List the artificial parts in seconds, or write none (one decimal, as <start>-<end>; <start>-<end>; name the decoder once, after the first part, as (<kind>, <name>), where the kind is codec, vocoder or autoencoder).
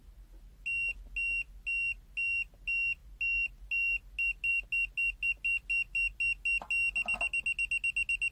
none